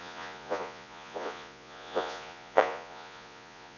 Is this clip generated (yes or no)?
yes